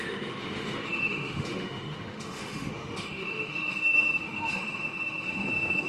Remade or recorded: remade